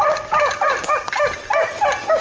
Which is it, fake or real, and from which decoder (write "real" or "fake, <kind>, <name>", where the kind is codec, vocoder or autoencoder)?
real